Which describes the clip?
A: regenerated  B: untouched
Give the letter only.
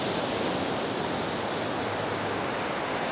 B